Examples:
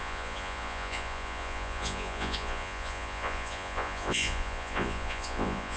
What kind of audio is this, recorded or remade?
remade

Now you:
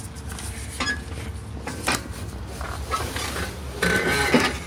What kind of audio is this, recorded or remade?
remade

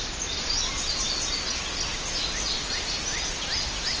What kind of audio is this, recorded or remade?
recorded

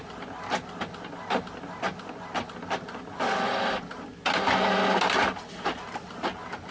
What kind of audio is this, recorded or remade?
recorded